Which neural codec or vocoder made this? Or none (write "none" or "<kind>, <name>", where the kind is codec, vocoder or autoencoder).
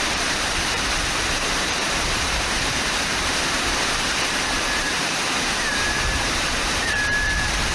vocoder, BigVGAN v2